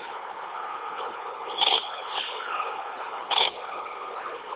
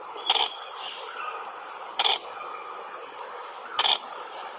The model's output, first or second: first